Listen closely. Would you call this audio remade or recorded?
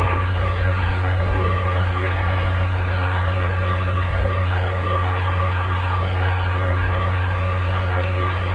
remade